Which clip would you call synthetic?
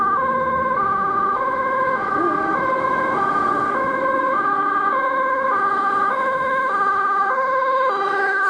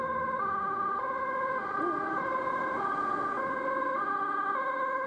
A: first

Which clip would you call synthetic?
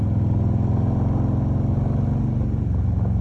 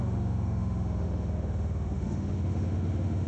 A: second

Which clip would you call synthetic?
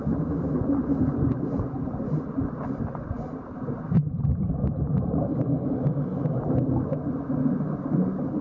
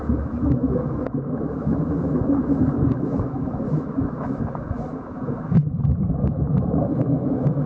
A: second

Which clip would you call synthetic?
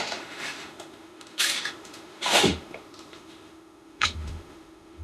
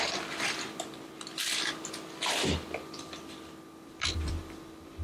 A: first